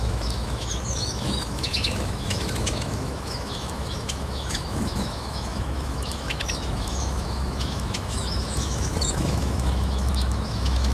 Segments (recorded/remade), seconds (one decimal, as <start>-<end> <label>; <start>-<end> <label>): 0.0-10.9 remade